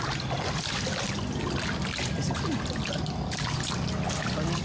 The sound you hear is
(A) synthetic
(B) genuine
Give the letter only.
B